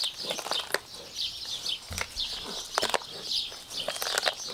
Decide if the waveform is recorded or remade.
recorded